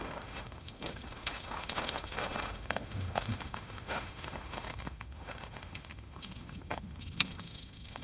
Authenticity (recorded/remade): remade